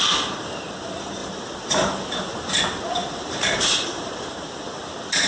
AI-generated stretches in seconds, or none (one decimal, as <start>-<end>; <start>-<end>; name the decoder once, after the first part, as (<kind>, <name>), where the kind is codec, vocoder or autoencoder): 1.2-2.6 (vocoder, BigVGAN v2); 3.0-4.6